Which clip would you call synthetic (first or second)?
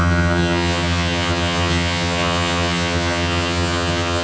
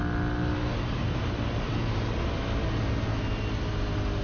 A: first